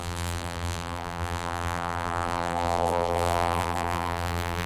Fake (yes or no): yes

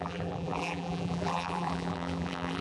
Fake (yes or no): yes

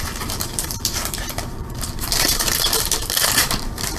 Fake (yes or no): yes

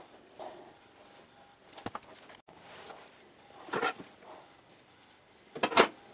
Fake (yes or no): no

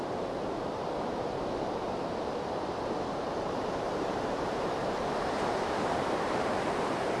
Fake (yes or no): yes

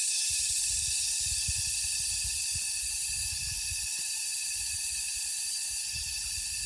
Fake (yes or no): no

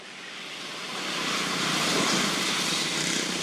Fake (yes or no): no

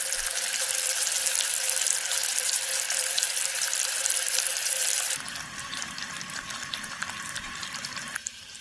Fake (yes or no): yes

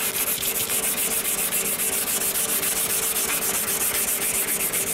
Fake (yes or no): no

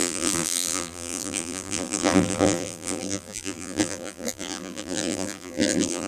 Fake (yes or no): yes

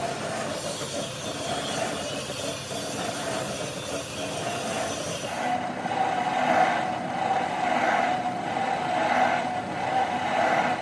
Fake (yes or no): no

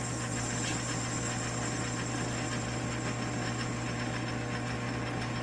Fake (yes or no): no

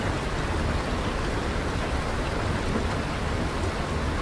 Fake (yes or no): no